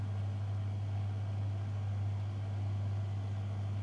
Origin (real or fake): real